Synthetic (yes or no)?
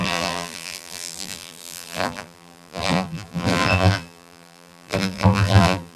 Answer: yes